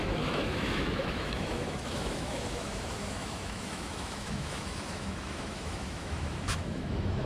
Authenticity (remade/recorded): remade